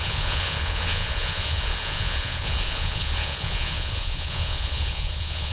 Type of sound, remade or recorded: remade